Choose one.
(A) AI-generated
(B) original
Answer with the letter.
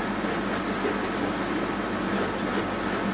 B